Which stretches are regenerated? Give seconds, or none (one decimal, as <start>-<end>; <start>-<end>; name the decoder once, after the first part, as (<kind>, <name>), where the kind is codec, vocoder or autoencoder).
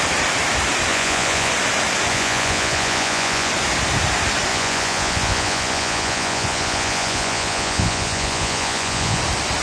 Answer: 0.9-1.5 (vocoder, Vocos); 2.1-3.5; 4.5-9.2